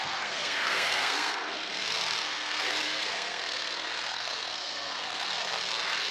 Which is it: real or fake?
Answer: fake